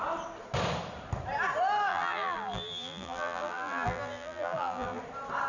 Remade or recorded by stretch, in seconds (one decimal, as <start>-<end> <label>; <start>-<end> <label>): 0.0-1.9 recorded; 1.9-5.0 remade; 5.0-5.5 recorded